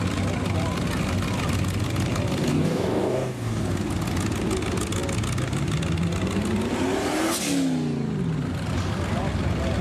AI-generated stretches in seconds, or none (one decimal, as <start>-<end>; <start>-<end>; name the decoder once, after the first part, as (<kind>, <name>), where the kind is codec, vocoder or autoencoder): 2.5-3.6 (codec, DAC)